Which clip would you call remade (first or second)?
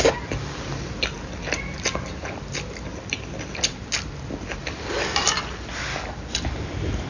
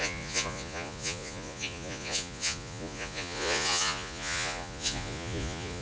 second